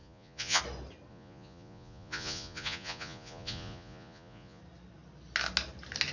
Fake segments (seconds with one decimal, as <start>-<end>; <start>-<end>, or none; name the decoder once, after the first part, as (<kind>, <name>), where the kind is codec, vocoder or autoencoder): 0.0-0.6 (vocoder, Vocos); 1.1-4.6